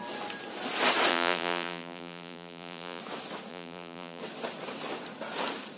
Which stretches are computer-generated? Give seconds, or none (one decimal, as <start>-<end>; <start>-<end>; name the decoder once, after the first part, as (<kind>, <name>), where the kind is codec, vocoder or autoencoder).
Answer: 1.1-3.0 (vocoder, BigVGAN v2); 3.5-4.2